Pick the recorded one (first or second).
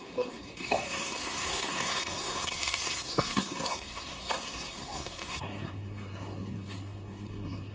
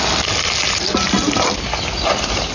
second